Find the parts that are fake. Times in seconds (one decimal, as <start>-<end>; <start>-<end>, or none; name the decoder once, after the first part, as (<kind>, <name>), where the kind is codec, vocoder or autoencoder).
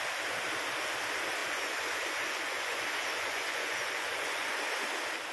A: 1.4-4.6 (vocoder, Vocos)